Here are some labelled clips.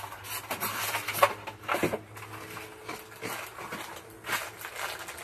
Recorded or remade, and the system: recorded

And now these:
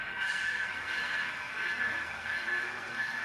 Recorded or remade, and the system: remade, codec, SNAC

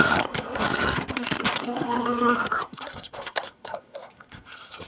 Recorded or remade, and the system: remade, codec, SNAC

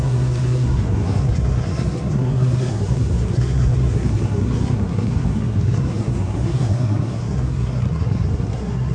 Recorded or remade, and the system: remade, codec, SNAC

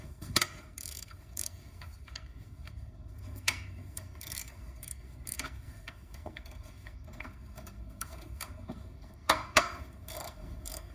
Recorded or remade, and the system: remade, codec, SNAC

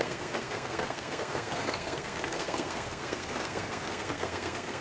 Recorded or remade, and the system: remade, codec, SNAC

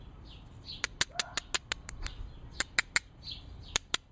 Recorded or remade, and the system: recorded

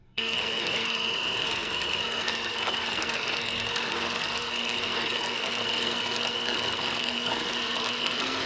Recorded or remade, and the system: remade, codec, SNAC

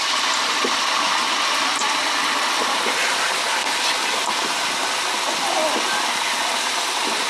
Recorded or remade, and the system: recorded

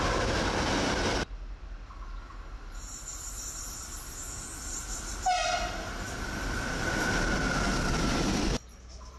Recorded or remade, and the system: recorded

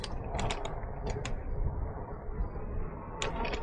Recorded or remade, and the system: recorded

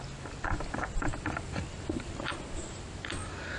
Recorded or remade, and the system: recorded